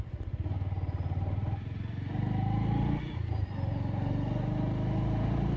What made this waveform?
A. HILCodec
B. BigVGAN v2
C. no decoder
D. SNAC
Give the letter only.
C